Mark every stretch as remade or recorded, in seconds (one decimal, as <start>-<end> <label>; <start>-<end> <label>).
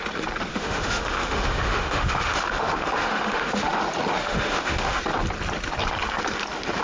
0.0-0.5 recorded; 0.5-3.8 remade; 3.8-4.2 recorded; 4.2-5.0 remade; 5.0-6.8 recorded